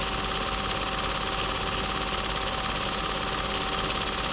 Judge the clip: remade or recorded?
recorded